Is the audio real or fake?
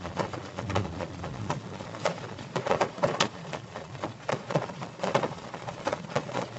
fake